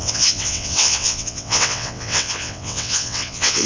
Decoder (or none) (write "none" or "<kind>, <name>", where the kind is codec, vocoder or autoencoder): vocoder, WaveNeXt